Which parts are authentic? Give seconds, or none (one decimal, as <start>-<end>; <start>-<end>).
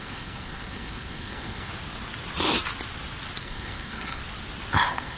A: 1.7-3.4; 4.2-4.7